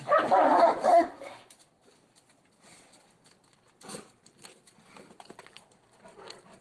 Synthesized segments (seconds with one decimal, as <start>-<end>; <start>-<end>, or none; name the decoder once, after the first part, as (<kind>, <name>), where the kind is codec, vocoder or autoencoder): 0.9-1.5 (codec, SNAC)